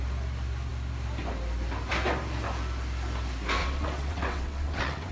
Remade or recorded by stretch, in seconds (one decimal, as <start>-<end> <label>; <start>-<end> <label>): 0.0-3.6 recorded; 3.6-5.1 remade